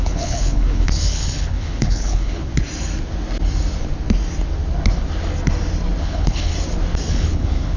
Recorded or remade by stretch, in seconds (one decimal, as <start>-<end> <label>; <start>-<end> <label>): 0.0-2.5 remade; 2.5-6.0 recorded; 6.0-6.5 remade; 6.5-7.1 recorded; 7.1-7.8 remade